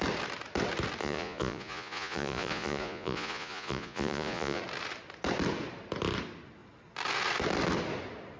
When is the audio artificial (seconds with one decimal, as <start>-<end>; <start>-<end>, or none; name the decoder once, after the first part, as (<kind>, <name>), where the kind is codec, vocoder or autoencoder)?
1.0-4.6 (vocoder, Vocos)